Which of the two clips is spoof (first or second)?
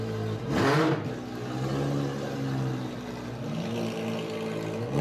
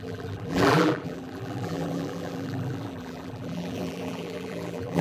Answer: second